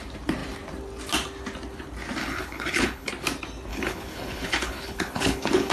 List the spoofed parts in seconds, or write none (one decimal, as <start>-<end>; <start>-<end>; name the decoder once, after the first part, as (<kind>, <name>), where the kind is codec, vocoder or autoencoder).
2.2-3.1 (codec, HILCodec); 3.7-5.7